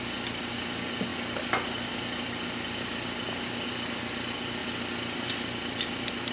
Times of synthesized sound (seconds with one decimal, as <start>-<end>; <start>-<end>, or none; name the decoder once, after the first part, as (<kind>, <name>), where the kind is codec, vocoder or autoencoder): none